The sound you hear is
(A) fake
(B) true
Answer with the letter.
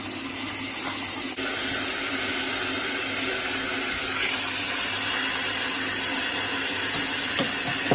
B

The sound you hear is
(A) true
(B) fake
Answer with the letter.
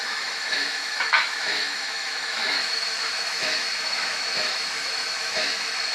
B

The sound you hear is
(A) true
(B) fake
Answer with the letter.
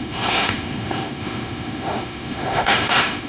B